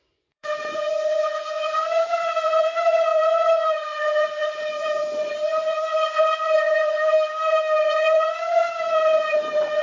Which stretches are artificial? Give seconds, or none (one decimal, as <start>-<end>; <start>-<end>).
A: 0.0-7.0; 7.8-9.8